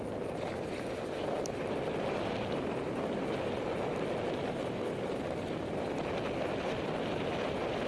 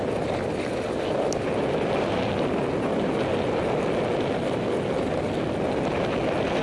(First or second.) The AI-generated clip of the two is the first